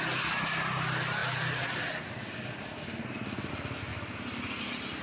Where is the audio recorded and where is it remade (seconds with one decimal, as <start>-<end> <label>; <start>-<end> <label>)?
0.0-3.9 recorded; 3.9-4.6 remade; 4.6-5.0 recorded